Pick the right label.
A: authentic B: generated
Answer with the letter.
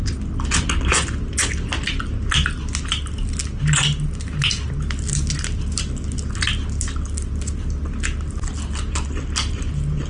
A